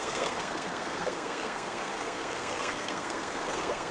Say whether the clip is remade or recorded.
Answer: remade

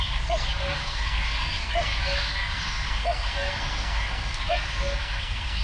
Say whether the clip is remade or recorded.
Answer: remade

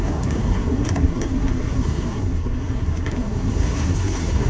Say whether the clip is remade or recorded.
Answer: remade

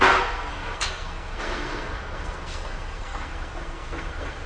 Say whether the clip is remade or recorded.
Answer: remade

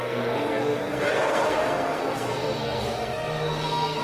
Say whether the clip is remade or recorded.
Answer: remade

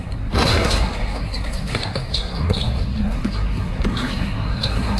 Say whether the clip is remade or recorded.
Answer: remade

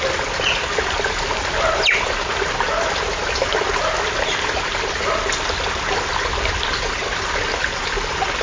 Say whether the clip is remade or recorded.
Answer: recorded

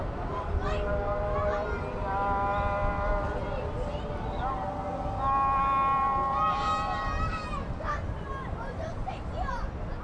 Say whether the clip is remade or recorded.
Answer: recorded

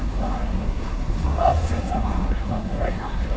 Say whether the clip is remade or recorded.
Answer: remade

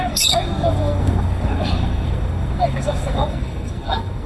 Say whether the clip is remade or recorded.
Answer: remade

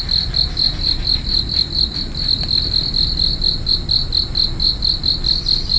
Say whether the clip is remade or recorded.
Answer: recorded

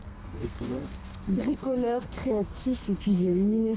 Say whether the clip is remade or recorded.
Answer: remade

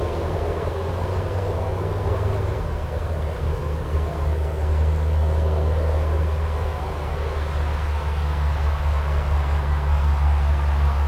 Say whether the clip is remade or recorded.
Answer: remade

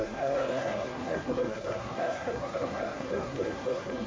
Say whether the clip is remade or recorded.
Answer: remade